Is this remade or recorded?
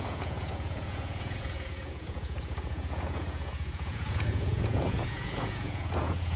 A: remade